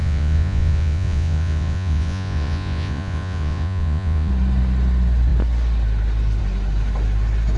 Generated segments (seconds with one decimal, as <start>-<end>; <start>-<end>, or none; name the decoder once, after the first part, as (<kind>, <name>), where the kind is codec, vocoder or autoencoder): 0.0-4.3 (vocoder, Vocos)